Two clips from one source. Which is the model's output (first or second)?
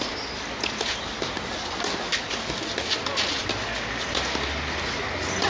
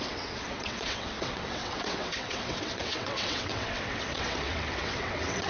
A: second